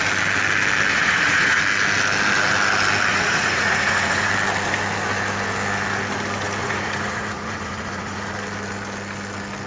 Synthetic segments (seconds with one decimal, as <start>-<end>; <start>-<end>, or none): 0.9-1.6; 3.1-4.3; 6.6-8.3